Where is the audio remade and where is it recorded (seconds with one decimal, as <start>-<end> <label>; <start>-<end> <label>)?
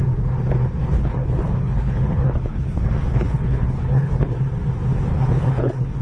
0.0-0.8 recorded; 0.8-4.4 remade; 4.4-5.1 recorded; 5.1-6.0 remade